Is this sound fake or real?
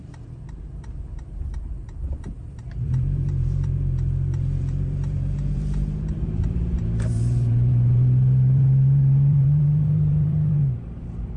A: fake